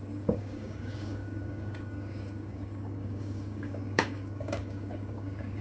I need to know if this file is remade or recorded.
remade